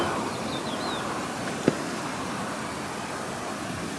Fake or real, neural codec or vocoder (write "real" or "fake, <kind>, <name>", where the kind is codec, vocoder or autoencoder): real